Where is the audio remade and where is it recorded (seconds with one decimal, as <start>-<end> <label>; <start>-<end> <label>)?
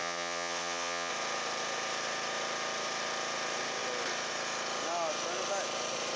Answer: 0.0-1.1 remade; 1.1-6.2 recorded